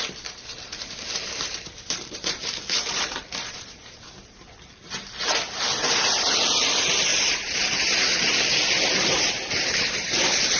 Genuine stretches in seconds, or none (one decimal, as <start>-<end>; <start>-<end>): none